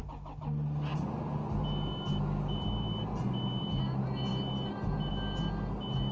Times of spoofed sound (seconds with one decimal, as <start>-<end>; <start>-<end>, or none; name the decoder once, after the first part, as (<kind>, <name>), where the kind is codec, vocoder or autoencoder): none